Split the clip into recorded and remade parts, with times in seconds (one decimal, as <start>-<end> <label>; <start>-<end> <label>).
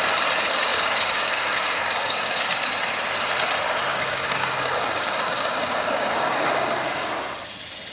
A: 0.0-0.7 recorded; 0.7-2.4 remade; 2.4-3.9 recorded; 3.9-7.1 remade; 7.1-7.9 recorded